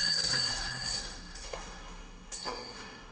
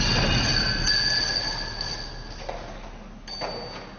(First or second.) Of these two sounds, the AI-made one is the first